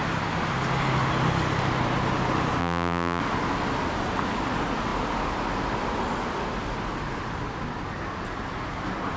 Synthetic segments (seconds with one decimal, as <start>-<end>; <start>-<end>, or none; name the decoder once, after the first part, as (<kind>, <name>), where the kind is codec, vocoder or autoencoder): 2.6-3.2 (vocoder, BigVGAN v2)